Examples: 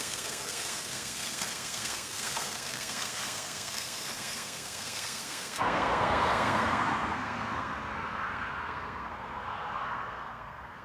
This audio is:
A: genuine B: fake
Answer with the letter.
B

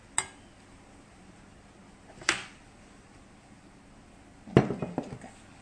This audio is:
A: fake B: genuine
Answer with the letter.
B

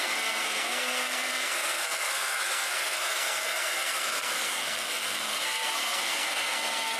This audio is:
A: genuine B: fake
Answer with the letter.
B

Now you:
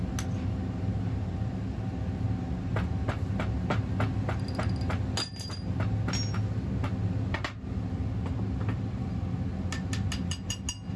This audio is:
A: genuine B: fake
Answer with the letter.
A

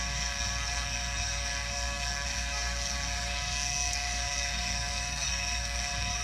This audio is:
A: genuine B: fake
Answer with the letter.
B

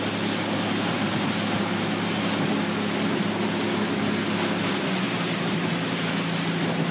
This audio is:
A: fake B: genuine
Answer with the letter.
B